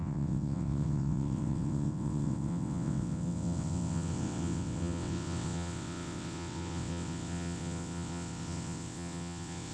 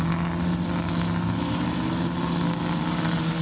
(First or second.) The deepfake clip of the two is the first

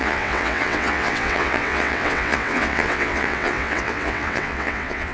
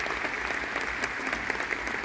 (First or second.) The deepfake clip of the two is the first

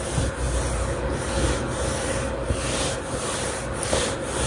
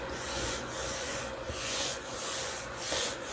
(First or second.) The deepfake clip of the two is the second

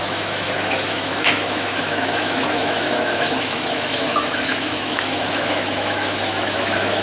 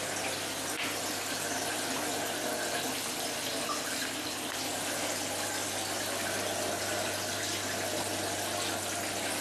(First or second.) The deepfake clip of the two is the first